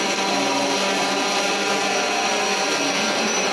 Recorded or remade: recorded